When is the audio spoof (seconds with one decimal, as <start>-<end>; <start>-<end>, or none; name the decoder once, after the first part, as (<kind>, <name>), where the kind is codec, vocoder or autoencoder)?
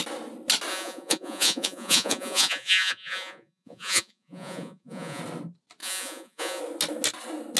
0.7-5.2 (vocoder, Vocos); 5.8-6.6